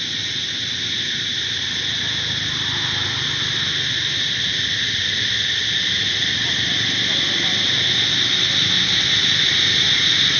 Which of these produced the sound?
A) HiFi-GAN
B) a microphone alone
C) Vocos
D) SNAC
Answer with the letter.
B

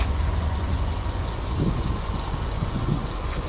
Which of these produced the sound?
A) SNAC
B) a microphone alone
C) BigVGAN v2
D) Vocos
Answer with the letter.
D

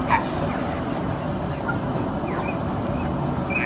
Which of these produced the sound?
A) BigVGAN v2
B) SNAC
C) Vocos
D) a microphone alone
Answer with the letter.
D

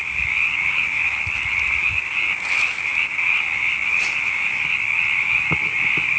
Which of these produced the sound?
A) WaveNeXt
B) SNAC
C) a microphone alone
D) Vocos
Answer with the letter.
C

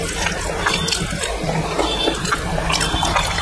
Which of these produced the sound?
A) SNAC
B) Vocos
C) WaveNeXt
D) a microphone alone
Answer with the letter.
D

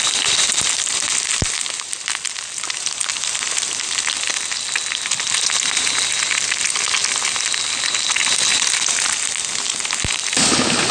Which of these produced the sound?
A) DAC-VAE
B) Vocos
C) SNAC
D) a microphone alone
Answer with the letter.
D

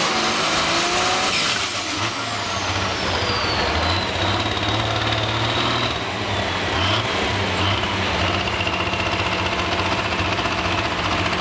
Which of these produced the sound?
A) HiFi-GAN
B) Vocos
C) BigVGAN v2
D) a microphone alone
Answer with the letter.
D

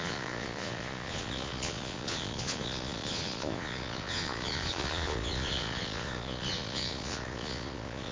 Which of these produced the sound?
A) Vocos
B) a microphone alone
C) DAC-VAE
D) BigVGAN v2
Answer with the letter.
A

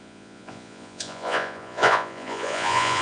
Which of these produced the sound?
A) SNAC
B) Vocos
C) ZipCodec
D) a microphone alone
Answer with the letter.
B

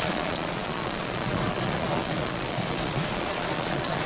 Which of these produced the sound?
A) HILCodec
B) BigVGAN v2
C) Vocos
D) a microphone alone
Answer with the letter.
C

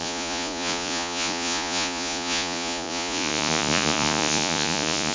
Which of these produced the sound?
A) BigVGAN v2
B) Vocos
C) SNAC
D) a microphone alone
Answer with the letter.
B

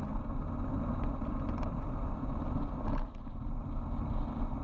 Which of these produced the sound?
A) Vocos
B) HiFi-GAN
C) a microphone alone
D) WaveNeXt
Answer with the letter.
C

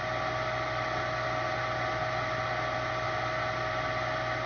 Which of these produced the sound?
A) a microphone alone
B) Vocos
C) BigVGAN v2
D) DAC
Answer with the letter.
A